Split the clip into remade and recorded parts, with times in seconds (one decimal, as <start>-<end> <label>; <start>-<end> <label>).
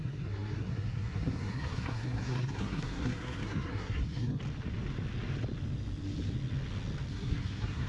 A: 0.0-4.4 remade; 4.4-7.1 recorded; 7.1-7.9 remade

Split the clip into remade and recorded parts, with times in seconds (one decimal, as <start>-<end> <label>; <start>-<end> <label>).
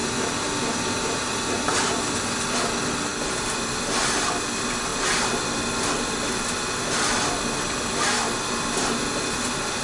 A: 0.0-3.1 recorded; 3.1-3.6 remade; 3.6-9.8 recorded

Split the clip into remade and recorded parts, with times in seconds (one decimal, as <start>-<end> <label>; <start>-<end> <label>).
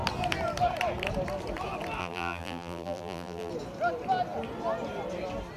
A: 0.0-2.0 recorded; 2.0-3.5 remade; 3.5-5.6 recorded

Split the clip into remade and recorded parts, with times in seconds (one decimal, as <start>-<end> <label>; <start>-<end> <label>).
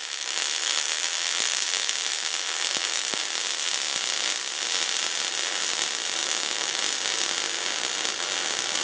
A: 0.0-3.2 remade; 3.2-6.2 recorded; 6.2-6.8 remade; 6.8-8.8 recorded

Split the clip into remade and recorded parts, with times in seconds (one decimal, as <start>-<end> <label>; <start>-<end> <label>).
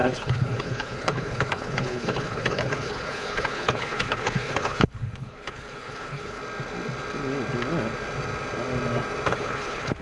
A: 0.0-6.4 remade; 6.4-9.3 recorded; 9.3-10.0 remade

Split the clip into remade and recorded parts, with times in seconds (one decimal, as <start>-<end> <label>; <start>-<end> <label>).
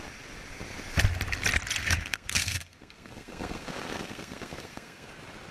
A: 0.0-1.8 recorded; 1.8-5.1 remade; 5.1-5.5 recorded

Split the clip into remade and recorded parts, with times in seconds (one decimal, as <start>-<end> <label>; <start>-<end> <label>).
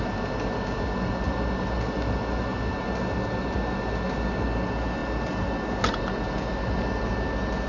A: 0.0-7.7 recorded